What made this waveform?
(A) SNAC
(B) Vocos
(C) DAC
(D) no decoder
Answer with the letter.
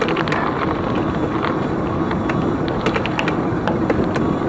D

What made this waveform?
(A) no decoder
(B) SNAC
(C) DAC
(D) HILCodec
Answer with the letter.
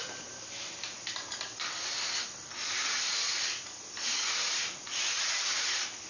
A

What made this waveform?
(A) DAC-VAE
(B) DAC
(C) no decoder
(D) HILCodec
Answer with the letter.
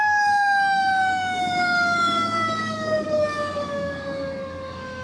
B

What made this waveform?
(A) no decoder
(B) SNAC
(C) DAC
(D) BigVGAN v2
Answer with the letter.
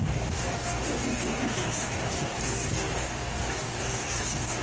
C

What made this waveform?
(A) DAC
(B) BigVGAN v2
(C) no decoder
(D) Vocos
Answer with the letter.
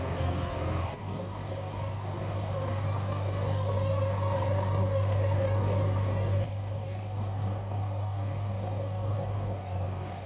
A